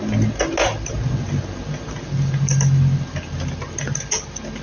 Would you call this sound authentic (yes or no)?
yes